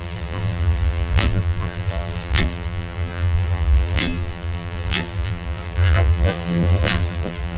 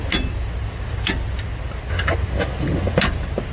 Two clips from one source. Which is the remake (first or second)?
first